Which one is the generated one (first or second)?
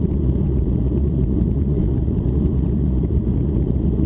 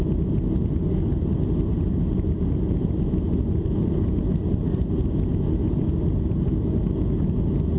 first